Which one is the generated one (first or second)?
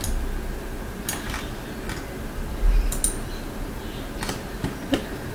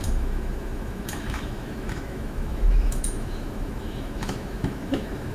second